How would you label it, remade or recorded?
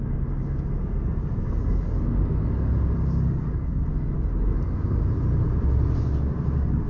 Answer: recorded